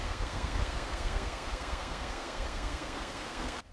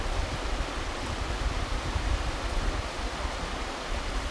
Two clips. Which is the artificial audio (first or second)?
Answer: first